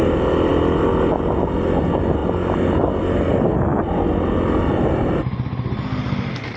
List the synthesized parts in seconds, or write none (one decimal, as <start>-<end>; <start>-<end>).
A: none